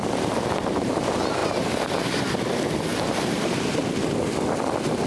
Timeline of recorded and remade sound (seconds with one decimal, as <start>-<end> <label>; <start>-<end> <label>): 0.0-1.4 recorded; 1.4-2.4 remade; 2.4-2.9 recorded; 2.9-3.8 remade; 3.8-5.1 recorded